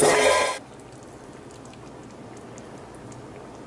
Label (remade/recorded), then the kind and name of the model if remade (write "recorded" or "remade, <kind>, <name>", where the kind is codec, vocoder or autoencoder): recorded